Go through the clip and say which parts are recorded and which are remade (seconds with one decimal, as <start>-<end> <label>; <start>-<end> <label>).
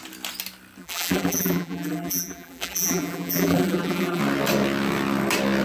0.0-0.8 recorded; 0.8-4.2 remade; 4.2-5.6 recorded